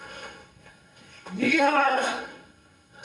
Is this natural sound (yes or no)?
no